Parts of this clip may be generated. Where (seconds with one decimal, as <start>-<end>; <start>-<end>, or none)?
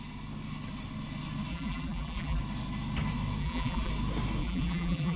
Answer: 1.5-2.4; 3.4-3.9; 4.4-5.2